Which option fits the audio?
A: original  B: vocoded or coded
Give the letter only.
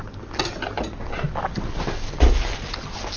A